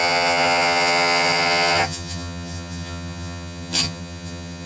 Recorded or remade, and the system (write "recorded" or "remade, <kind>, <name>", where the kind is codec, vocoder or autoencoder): remade, vocoder, HiFi-GAN